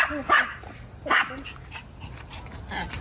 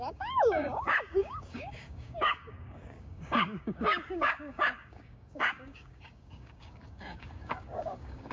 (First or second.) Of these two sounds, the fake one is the second